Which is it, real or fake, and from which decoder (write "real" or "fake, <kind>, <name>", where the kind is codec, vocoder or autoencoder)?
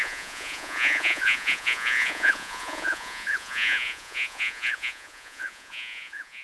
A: fake, vocoder, Vocos